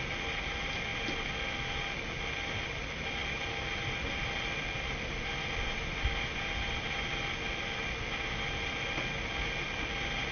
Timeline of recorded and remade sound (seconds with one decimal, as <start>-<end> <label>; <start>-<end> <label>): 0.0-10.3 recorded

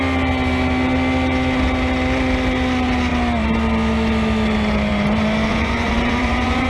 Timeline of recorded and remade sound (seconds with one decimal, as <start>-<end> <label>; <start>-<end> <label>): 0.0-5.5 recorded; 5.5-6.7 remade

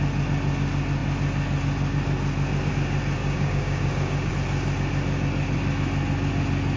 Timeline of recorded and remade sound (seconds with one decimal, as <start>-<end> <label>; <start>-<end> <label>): 0.0-3.2 recorded; 3.2-4.3 remade; 4.3-6.8 recorded

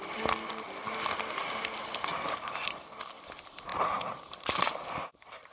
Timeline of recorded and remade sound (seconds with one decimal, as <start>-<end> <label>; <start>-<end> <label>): 0.0-2.1 recorded; 2.1-2.7 remade; 2.7-3.7 recorded; 3.7-4.7 remade; 4.7-5.5 recorded

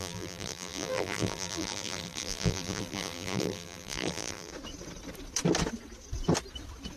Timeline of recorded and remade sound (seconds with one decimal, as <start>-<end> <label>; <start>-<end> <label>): 0.0-4.5 remade; 4.5-7.0 recorded

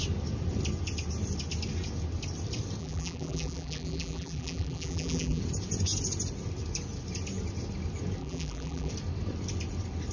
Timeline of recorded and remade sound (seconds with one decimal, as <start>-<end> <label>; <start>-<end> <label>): 0.0-2.8 recorded; 2.8-5.4 remade; 5.4-8.2 recorded; 8.2-8.9 remade; 8.9-10.1 recorded

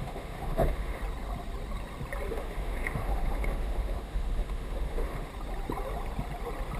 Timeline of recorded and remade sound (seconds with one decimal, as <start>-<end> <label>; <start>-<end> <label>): 0.0-1.0 remade; 1.0-2.3 recorded; 2.3-5.3 remade; 5.3-6.8 recorded

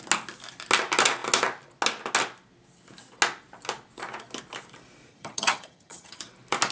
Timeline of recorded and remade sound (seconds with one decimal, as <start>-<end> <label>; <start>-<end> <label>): 0.0-5.1 recorded; 5.1-6.2 remade; 6.2-6.7 recorded